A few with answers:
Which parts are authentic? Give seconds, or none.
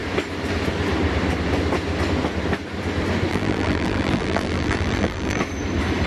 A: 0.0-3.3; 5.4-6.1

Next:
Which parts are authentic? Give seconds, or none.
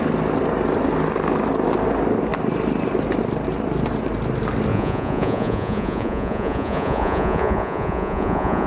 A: 0.0-4.7